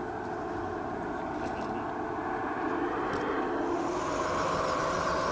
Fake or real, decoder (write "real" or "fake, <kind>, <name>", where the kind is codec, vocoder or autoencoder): real